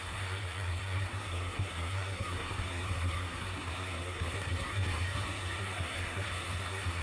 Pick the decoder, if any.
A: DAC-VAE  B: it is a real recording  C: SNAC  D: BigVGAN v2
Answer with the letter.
C